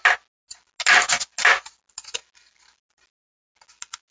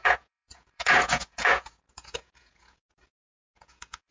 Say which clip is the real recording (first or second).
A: first